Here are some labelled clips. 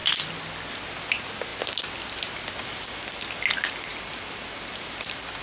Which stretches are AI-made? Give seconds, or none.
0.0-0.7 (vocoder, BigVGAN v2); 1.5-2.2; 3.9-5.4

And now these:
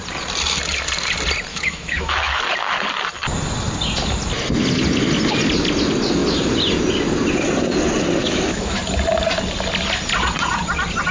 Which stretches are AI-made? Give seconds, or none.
1.5-2.4 (autoencoder, DAC-VAE); 8.2-8.8

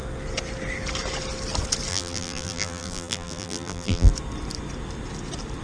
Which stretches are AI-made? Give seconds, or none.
1.9-4.1 (vocoder, BigVGAN v2)

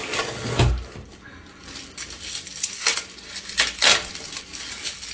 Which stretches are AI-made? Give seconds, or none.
none

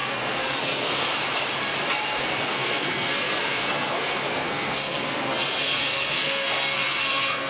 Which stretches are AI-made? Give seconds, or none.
0.0-1.1 (codec, SNAC); 2.2-7.5

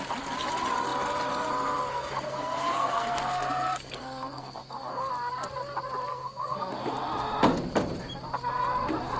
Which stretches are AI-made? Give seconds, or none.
1.9-5.1 (codec, SNAC); 6.1-6.7

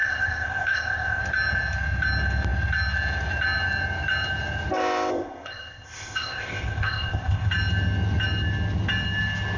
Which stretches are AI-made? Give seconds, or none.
0.0-1.2 (codec, ZipCodec); 5.1-7.5

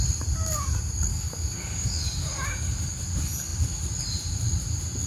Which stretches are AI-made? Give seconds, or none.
1.1-2.9 (codec, DAC)